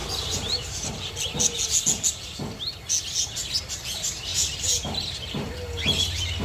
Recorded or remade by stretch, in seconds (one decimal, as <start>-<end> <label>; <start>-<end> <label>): 0.0-1.1 remade; 1.1-6.4 recorded